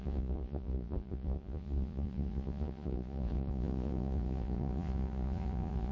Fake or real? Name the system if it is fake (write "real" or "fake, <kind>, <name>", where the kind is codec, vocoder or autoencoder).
fake, vocoder, Vocos